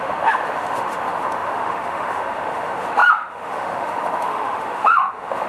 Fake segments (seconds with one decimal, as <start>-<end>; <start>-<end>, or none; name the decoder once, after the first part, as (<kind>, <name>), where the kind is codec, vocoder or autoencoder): 0.0-5.5 (autoencoder, DAC-VAE)